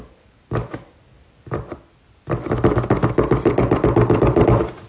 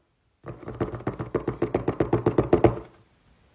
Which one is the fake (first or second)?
first